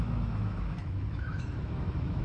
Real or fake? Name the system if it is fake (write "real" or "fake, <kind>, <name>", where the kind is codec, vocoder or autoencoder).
fake, autoencoder, DAC-VAE